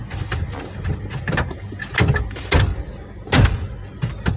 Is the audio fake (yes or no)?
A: no